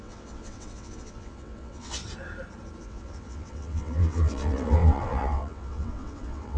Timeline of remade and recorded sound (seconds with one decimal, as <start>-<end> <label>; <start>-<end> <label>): 0.0-2.0 remade; 2.0-2.8 recorded; 2.8-6.6 remade